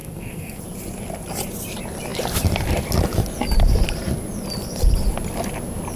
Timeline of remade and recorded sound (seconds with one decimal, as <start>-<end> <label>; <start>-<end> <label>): 0.0-0.6 remade; 0.6-6.0 recorded